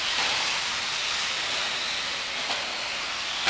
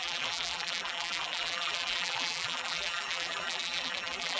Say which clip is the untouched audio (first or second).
first